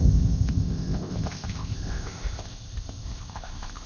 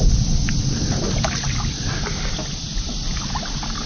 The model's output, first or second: first